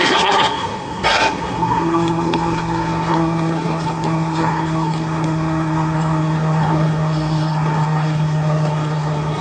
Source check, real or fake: fake